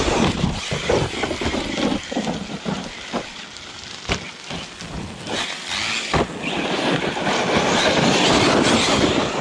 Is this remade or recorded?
recorded